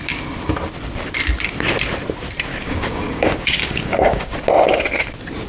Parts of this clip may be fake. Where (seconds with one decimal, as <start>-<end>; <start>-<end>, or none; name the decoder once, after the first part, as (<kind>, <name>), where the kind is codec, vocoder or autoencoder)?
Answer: 2.5-4.3 (codec, DAC)